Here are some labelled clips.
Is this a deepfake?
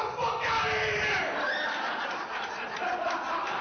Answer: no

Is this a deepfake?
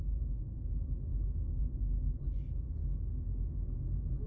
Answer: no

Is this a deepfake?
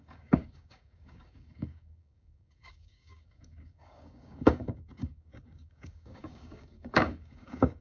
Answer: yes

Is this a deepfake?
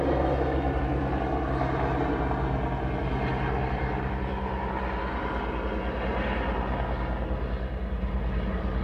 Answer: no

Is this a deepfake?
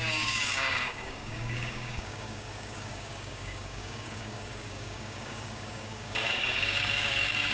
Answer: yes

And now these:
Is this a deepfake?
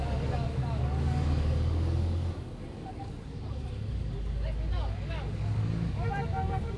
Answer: yes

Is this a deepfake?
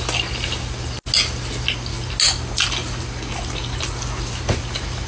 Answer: no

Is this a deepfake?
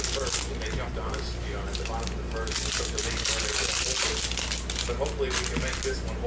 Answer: no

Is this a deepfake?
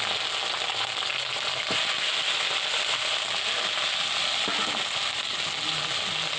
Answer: no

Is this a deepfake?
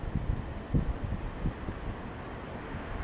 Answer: no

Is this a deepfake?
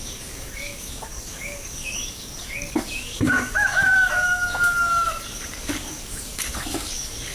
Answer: yes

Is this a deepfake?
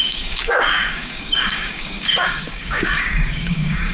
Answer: yes